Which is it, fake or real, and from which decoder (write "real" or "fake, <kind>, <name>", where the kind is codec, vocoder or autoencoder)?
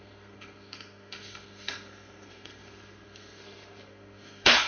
fake, codec, SNAC